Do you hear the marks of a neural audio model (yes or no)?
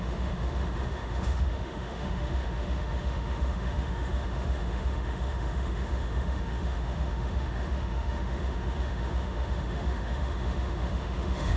yes